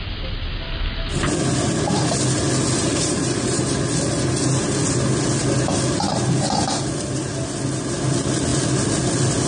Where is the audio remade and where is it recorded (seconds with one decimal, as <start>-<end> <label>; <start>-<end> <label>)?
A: 0.0-2.8 recorded; 2.8-3.6 remade; 3.6-6.6 recorded; 6.6-7.3 remade; 7.3-9.5 recorded

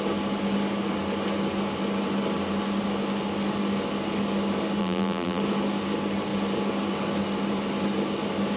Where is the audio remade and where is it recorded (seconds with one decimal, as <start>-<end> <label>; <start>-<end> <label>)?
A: 0.0-4.8 recorded; 4.8-5.4 remade; 5.4-8.6 recorded